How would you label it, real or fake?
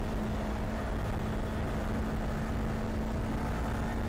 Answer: real